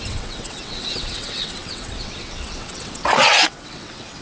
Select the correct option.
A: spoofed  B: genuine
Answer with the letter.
A